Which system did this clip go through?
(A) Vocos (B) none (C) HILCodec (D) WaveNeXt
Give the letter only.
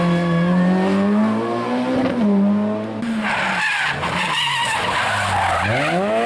B